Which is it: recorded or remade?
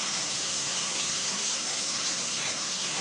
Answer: remade